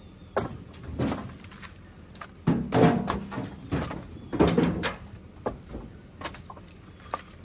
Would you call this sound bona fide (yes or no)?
yes